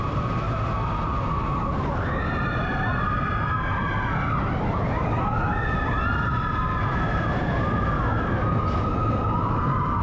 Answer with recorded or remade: recorded